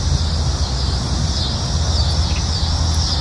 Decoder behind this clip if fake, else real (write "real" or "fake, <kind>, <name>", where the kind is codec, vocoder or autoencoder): real